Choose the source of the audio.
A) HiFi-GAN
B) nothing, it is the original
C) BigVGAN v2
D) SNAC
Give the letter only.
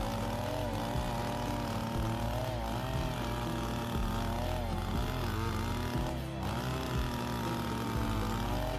B